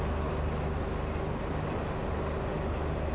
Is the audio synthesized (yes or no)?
no